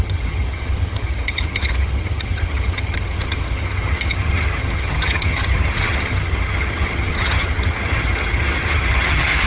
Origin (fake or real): fake